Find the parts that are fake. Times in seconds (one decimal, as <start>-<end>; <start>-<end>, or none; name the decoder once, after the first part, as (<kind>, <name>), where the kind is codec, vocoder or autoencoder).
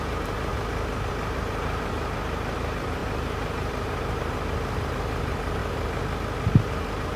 0.0-0.5 (vocoder, BigVGAN v2); 1.1-5.6; 6.7-7.2